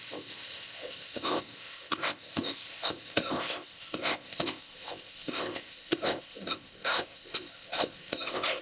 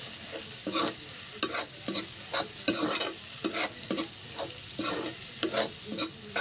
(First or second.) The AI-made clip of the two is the first